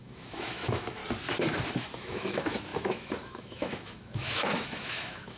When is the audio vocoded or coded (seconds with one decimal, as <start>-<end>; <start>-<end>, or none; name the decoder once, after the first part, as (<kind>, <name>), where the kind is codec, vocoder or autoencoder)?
0.0-1.0 (autoencoder, DAC-VAE); 1.8-5.4